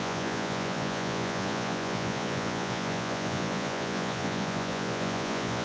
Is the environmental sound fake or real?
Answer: fake